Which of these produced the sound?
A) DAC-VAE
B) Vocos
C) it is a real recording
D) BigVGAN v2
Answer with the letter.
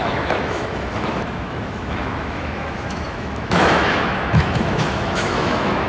A